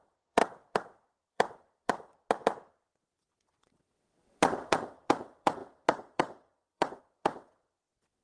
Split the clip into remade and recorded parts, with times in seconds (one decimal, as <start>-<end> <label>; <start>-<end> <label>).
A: 0.0-2.1 remade; 2.1-2.7 recorded; 2.7-8.2 remade